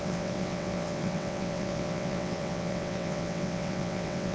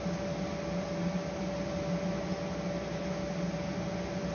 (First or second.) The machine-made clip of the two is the first